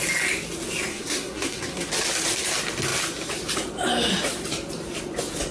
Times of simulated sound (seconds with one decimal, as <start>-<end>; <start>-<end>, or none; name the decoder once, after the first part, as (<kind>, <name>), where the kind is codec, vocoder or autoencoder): 0.9-1.9 (codec, SNAC)

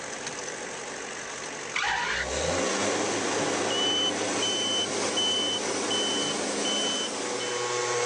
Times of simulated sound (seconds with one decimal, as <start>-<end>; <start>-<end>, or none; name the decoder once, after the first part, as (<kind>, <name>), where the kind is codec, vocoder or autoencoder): none

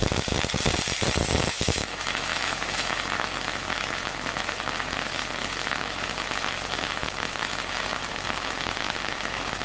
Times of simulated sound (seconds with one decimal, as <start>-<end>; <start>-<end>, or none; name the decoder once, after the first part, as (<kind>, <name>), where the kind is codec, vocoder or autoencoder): 1.5-9.6 (autoencoder, DAC-VAE)

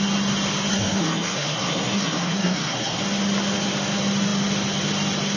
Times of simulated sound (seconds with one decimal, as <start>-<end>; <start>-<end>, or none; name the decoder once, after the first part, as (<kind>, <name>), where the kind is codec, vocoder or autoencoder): 0.7-3.0 (codec, SNAC)

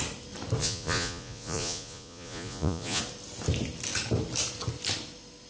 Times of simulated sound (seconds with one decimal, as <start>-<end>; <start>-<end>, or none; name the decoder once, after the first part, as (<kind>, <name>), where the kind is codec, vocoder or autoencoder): 0.6-3.0 (vocoder, Vocos)

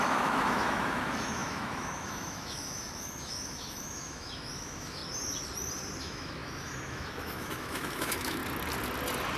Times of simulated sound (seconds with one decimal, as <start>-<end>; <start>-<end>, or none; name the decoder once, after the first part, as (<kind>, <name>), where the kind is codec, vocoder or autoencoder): 0.0-5.0 (autoencoder, DAC-VAE); 6.0-8.4